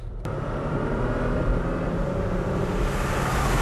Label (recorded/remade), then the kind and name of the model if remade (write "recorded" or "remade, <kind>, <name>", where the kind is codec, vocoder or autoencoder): remade, vocoder, BigVGAN v2